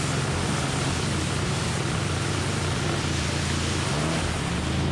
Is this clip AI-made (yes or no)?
no